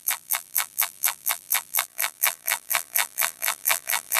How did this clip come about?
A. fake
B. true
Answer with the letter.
A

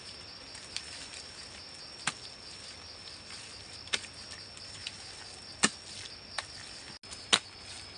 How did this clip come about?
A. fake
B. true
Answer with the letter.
B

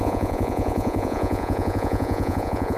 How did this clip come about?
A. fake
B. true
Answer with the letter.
A